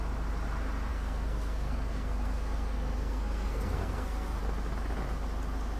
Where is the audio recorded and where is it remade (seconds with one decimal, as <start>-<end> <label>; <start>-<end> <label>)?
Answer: 0.0-0.9 recorded; 0.9-4.4 remade; 4.4-5.8 recorded